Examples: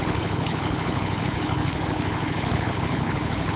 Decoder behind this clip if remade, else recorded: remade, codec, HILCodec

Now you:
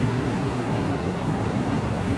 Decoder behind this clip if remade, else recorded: remade, codec, SNAC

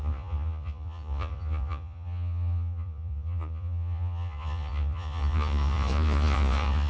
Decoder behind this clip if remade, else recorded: remade, vocoder, Vocos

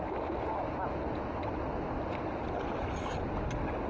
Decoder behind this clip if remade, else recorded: recorded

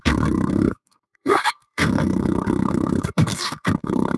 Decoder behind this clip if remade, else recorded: remade, codec, SNAC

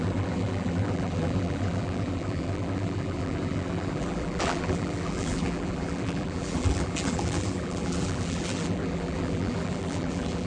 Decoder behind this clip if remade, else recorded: remade, vocoder, BigVGAN v2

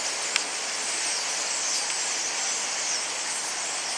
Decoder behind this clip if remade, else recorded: recorded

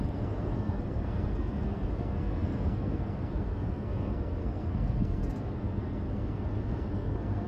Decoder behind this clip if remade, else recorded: remade, codec, SNAC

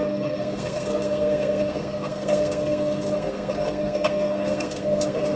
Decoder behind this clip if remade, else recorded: remade, codec, SNAC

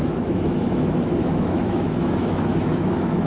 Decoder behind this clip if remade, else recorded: remade, autoencoder, DAC-VAE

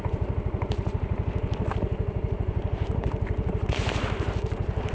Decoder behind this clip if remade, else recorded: remade, vocoder, BigVGAN v2